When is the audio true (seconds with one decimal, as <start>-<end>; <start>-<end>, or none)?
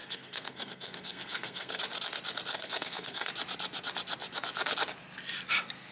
1.8-2.5; 3.3-5.9